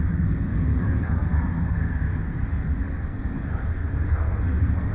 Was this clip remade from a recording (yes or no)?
yes